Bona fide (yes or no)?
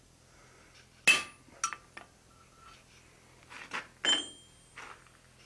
yes